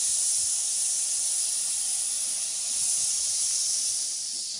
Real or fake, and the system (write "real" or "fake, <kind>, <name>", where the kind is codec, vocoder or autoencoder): real